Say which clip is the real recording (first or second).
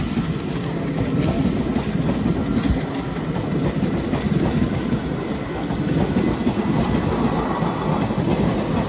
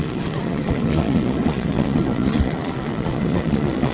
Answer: first